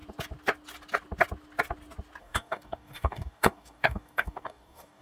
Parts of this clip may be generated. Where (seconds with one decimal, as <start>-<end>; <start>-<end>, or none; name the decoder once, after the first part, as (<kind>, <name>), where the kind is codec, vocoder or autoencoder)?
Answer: 2.2-5.0 (codec, DAC)